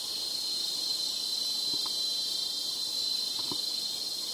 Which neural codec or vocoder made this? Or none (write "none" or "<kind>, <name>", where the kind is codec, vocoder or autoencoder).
none